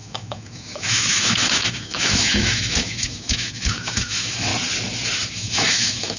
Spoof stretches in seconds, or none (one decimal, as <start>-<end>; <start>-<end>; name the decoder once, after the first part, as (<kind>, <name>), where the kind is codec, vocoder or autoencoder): 0.0-4.5 (autoencoder, DAC-VAE); 5.3-6.2